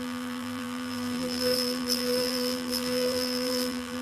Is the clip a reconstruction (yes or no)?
yes